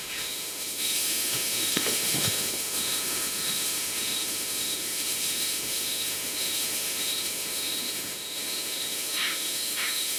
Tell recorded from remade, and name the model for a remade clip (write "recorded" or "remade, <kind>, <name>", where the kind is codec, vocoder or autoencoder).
remade, autoencoder, DAC-VAE